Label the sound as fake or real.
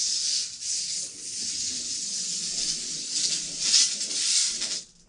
real